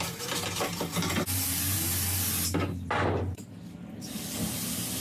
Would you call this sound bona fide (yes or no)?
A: yes